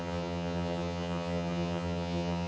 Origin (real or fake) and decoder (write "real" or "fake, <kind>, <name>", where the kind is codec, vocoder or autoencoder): fake, vocoder, HiFi-GAN